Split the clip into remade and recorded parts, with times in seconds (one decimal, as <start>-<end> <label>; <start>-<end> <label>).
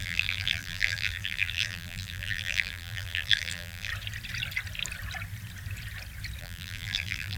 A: 0.0-3.9 remade; 3.9-6.4 recorded; 6.4-7.4 remade